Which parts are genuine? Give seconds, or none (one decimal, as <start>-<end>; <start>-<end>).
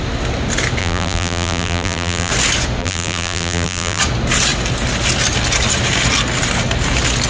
0.0-0.8; 2.3-2.8; 4.0-7.3